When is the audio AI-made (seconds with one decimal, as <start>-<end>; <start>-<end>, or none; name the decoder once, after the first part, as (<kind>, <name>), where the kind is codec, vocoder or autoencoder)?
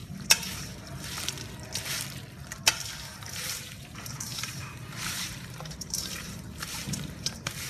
0.0-1.0 (vocoder, BigVGAN v2); 3.1-7.7